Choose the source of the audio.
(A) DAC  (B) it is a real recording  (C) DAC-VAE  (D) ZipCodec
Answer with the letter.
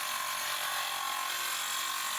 B